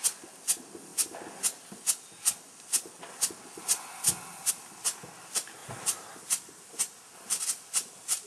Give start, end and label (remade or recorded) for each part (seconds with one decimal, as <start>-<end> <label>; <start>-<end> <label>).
0.0-5.6 recorded; 5.6-6.6 remade; 6.6-8.3 recorded